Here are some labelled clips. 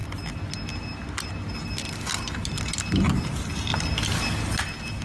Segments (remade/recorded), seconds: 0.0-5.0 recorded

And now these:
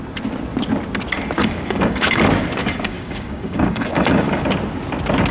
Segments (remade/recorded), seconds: 0.0-1.4 recorded; 1.4-2.2 remade; 2.2-2.6 recorded; 2.6-4.4 remade; 4.4-5.3 recorded

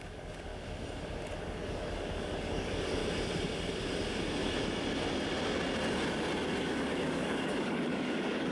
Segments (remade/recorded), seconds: 0.0-0.5 remade; 0.5-1.4 recorded; 1.4-3.0 remade; 3.0-6.6 recorded; 6.6-8.5 remade

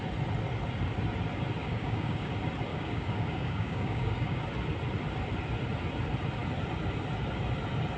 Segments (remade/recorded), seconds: 0.0-1.6 recorded; 1.6-2.3 remade; 2.3-2.7 recorded; 2.7-4.4 remade; 4.4-8.0 recorded

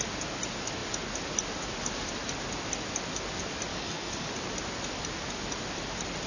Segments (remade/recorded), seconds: 0.0-3.7 recorded; 3.7-4.3 remade; 4.3-6.3 recorded